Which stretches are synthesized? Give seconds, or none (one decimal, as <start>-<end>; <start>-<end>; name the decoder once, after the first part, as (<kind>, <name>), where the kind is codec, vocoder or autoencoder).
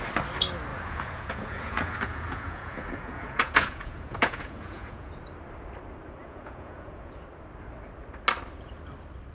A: 0.7-5.1 (vocoder, Vocos); 6.2-7.1